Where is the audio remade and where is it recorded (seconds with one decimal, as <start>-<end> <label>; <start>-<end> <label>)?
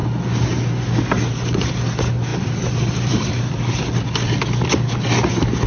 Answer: 0.0-2.3 recorded; 2.3-4.8 remade; 4.8-5.7 recorded